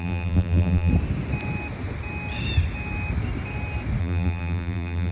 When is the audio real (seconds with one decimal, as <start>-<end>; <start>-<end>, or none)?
0.9-4.0